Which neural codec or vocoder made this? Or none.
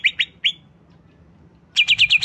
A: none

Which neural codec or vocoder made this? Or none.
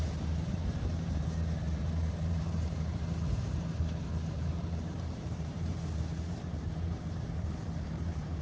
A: vocoder, BigVGAN v2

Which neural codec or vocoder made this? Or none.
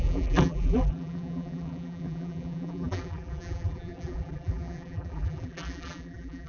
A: vocoder, BigVGAN v2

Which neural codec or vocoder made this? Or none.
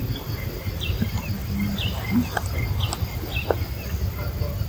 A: none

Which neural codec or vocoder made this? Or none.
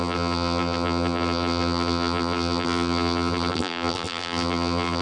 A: vocoder, BigVGAN v2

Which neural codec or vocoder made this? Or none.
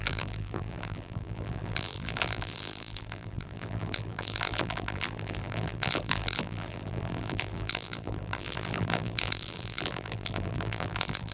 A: vocoder, BigVGAN v2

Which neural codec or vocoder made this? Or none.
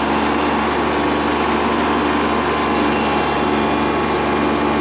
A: none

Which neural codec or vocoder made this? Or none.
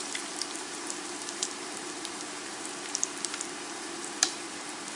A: vocoder, BigVGAN v2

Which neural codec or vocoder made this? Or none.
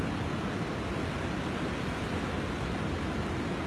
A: none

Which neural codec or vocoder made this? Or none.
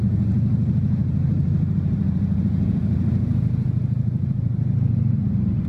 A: vocoder, BigVGAN v2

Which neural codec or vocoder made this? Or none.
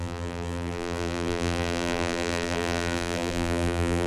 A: vocoder, BigVGAN v2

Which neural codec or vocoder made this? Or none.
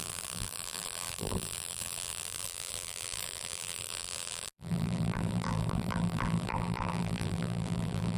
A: vocoder, BigVGAN v2